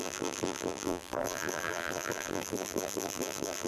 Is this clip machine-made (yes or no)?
yes